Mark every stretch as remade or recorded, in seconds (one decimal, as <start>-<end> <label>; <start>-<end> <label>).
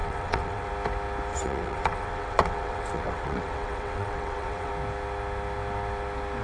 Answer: 0.0-0.7 remade; 0.7-1.3 recorded; 1.3-4.7 remade; 4.7-6.4 recorded